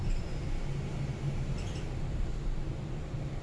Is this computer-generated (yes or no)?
yes